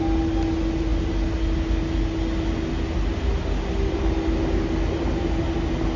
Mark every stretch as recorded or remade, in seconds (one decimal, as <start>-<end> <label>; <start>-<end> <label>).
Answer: 0.0-6.0 recorded